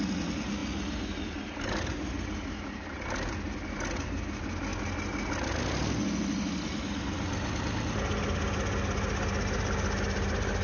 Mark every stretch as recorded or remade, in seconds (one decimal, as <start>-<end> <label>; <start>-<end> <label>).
0.0-10.6 recorded